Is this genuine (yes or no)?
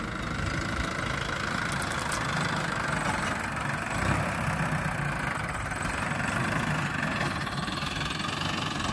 yes